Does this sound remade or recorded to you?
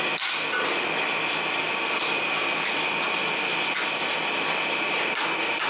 recorded